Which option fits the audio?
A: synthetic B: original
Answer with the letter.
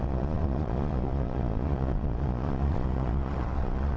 A